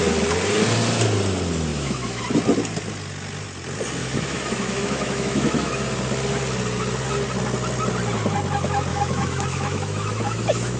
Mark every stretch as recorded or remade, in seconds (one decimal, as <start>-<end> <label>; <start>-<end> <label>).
0.0-1.7 recorded; 1.7-2.2 remade; 2.2-4.0 recorded; 4.0-5.7 remade; 5.7-8.9 recorded; 8.9-10.8 remade